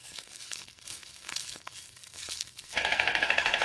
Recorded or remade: remade